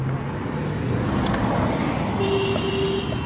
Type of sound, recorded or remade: recorded